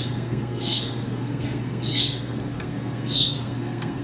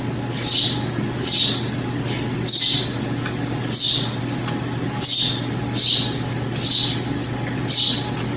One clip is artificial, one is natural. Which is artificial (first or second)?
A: first